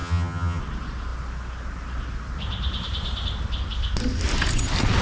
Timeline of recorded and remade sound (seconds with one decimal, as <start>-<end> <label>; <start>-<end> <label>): 0.0-0.6 remade; 0.6-5.0 recorded

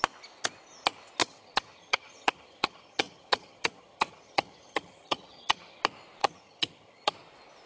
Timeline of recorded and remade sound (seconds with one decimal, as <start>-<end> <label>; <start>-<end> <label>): 0.0-1.2 recorded; 1.2-5.8 remade; 5.8-6.2 recorded; 6.2-7.1 remade; 7.1-7.7 recorded

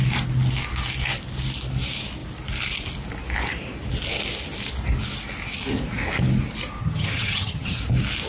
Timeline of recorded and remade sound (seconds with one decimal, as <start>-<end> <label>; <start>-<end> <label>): 0.0-6.8 recorded; 6.8-7.8 remade; 7.8-8.3 recorded

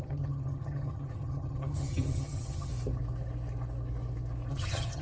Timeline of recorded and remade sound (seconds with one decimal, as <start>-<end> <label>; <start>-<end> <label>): 0.0-2.7 remade; 2.7-4.5 recorded; 4.5-5.0 remade

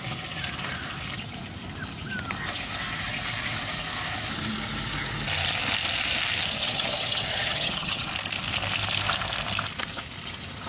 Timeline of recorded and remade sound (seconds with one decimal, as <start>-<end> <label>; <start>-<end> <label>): 0.0-6.6 recorded; 6.6-8.1 remade; 8.1-10.7 recorded

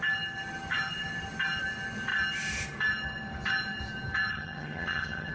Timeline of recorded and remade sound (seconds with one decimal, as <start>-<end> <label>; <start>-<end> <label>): 0.0-4.3 recorded; 4.3-5.3 remade

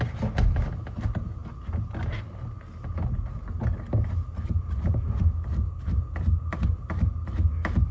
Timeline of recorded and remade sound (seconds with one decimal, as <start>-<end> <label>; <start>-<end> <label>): 0.0-7.9 recorded

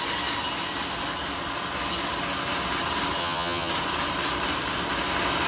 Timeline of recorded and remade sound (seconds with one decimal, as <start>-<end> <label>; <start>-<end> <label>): 0.0-3.2 recorded; 3.2-3.7 remade; 3.7-5.5 recorded